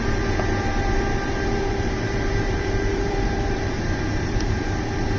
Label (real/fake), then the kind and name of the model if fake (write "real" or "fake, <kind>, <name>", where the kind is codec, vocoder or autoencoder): fake, vocoder, BigVGAN v2